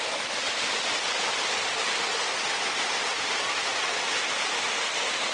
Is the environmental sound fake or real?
real